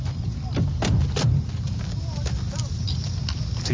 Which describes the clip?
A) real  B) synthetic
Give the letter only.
A